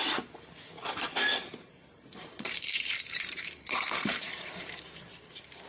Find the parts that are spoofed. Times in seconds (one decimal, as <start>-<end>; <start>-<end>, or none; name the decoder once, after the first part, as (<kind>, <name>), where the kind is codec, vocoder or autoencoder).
1.4-4.8 (vocoder, BigVGAN v2)